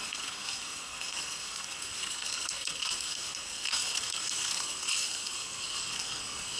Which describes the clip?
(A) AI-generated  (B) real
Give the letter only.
A